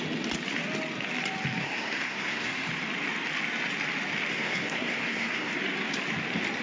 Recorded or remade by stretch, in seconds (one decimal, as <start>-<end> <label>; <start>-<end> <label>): 0.0-1.6 recorded; 1.6-2.7 remade; 2.7-4.3 recorded; 4.3-5.5 remade; 5.5-6.6 recorded